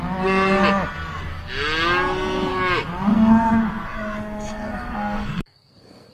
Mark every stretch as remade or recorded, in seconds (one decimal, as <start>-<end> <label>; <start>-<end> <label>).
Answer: 0.0-3.1 recorded; 3.1-6.1 remade